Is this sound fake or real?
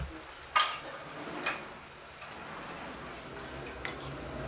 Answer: real